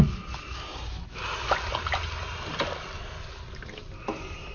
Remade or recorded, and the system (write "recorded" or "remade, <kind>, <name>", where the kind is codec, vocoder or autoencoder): recorded